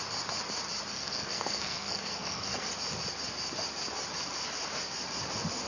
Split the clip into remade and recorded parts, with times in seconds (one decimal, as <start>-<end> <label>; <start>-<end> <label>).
0.0-0.9 recorded; 0.9-2.7 remade; 2.7-5.7 recorded

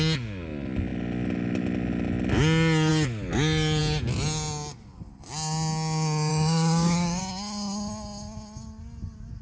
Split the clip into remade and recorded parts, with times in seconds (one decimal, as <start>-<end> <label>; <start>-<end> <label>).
0.0-6.3 recorded; 6.3-7.2 remade; 7.2-9.4 recorded

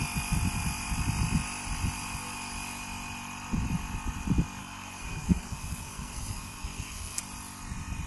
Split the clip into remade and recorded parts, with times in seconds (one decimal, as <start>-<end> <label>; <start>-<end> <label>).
0.0-4.6 recorded; 4.6-7.2 remade; 7.2-8.1 recorded

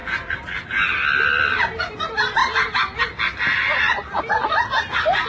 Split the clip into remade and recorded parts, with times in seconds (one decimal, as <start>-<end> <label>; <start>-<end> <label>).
0.0-5.3 recorded